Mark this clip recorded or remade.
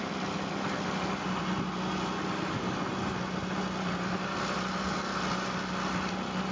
recorded